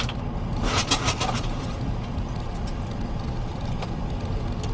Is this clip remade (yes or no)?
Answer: no